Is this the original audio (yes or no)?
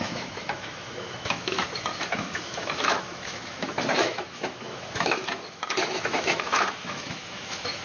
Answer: no